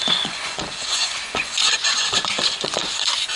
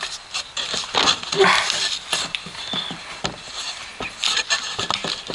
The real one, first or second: second